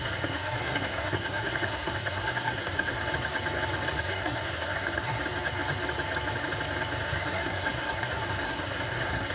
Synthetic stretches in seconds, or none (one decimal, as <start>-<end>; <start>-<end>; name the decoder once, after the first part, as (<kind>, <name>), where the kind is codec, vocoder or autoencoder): 0.0-3.0 (codec, SNAC); 4.0-5.2; 7.0-9.3